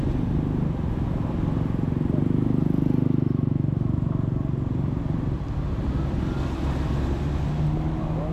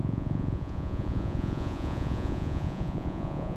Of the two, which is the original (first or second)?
first